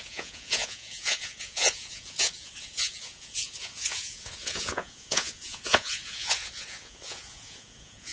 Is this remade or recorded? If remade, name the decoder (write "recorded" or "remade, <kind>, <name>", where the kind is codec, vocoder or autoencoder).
remade, vocoder, Vocos